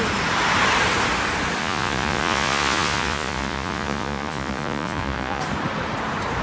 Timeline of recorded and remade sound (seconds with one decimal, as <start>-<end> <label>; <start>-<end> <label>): 0.0-1.6 recorded; 1.6-5.4 remade; 5.4-6.4 recorded